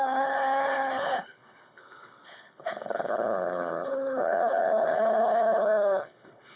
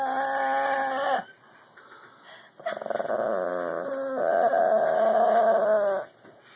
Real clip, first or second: second